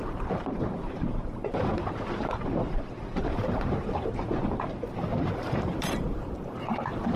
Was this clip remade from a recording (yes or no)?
yes